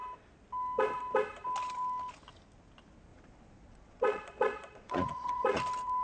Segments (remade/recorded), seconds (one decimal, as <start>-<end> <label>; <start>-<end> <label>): 0.0-3.1 recorded; 3.1-5.6 remade; 5.6-6.0 recorded